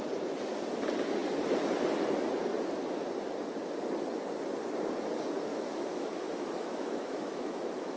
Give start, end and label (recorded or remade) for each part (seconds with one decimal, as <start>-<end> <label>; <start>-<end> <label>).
0.0-5.5 recorded; 5.5-8.0 remade